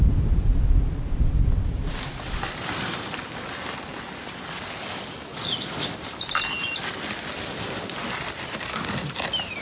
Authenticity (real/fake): real